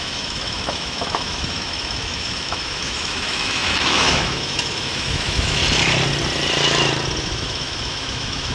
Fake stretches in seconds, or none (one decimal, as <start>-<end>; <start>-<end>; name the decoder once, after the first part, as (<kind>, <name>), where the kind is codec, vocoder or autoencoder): 0.0-5.6 (autoencoder, DAC-VAE); 7.2-8.5